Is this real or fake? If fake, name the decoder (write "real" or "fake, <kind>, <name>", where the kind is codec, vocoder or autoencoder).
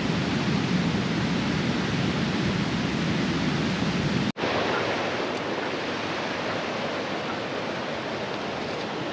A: real